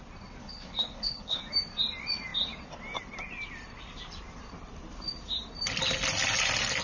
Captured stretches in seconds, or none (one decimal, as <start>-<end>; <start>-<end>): 0.0-0.4; 1.4-6.8